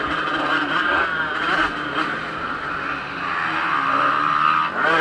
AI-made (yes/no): no